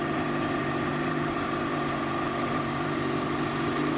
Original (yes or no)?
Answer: no